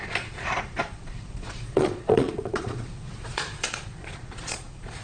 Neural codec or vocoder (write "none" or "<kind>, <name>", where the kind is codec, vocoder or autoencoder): vocoder, Vocos